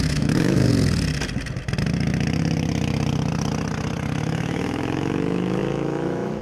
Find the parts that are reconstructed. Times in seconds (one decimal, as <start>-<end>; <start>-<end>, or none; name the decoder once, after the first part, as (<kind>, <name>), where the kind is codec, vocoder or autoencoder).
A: 0.0-0.7 (autoencoder, DAC-VAE); 4.2-6.4